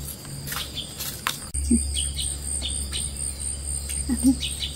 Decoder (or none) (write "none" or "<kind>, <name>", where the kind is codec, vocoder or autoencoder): none